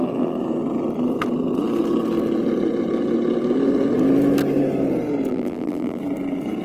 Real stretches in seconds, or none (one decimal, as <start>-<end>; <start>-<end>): 0.0-5.3; 6.0-6.6